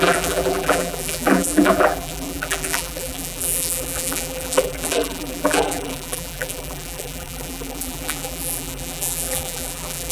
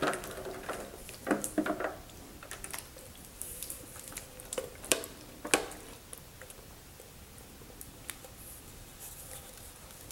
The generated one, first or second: first